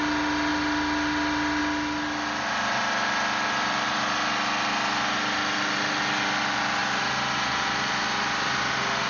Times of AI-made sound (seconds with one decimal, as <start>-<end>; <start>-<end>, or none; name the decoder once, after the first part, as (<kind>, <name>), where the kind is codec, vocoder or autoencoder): none